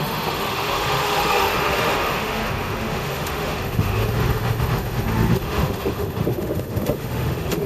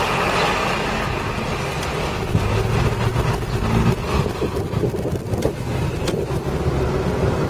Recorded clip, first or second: second